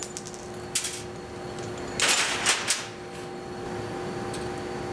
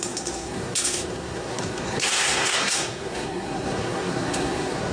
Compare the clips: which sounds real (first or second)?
first